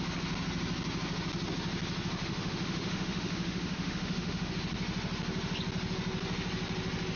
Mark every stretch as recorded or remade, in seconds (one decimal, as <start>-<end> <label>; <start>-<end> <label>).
0.0-2.2 recorded; 2.2-4.5 remade; 4.5-7.2 recorded